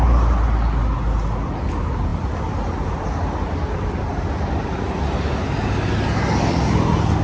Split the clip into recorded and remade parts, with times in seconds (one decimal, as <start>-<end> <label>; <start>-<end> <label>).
0.0-7.2 recorded